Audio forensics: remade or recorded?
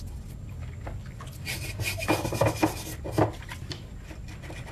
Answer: recorded